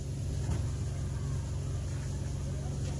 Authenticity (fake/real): real